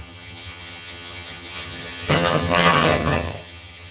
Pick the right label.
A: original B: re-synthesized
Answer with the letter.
B